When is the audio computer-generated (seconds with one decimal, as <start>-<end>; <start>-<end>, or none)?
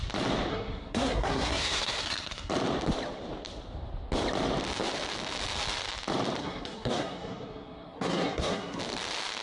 0.5-2.5; 6.4-8.8